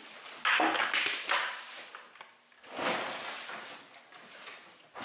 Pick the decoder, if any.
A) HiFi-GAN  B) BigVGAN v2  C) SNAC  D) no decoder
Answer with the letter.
D